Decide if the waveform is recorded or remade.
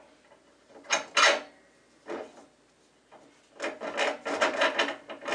recorded